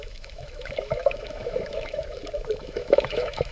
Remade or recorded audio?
remade